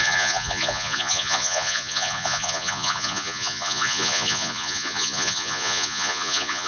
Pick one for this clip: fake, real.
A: fake